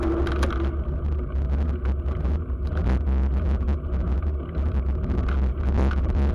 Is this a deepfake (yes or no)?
no